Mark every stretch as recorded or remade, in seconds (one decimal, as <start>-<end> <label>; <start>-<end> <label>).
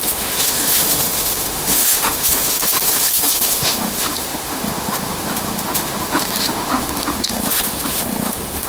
0.0-8.7 remade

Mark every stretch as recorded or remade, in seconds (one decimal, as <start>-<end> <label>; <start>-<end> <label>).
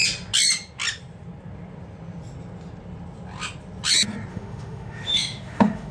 0.0-4.3 recorded; 4.3-5.9 remade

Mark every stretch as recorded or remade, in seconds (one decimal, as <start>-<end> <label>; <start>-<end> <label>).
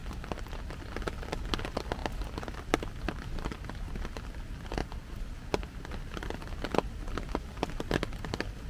0.0-8.7 recorded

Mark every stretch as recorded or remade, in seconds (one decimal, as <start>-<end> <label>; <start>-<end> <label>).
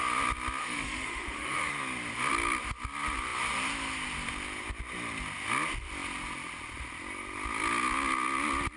0.0-0.6 recorded; 0.6-1.7 remade; 1.7-8.8 recorded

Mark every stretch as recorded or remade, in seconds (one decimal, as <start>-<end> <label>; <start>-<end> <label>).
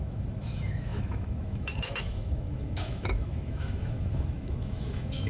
0.0-5.3 remade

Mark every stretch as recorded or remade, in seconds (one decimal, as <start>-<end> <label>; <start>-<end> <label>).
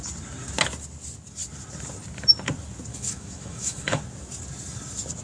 0.0-2.9 recorded; 2.9-4.0 remade; 4.0-5.2 recorded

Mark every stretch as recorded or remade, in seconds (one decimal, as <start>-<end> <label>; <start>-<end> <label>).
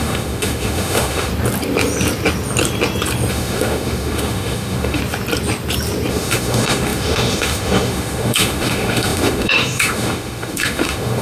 0.0-1.3 remade; 1.3-3.3 recorded; 3.3-5.0 remade; 5.0-6.1 recorded; 6.1-11.2 remade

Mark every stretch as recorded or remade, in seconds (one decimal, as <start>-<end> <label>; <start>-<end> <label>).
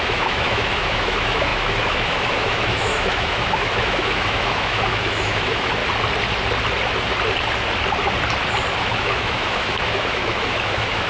0.0-5.8 remade; 5.8-8.8 recorded; 8.8-11.1 remade